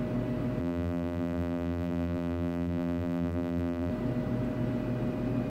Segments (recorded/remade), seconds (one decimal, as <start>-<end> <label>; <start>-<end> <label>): 0.0-0.6 recorded; 0.6-3.9 remade; 3.9-5.5 recorded